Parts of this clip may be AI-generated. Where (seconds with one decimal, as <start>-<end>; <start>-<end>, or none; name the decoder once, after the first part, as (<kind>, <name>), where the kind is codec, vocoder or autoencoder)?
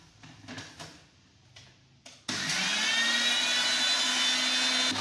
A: none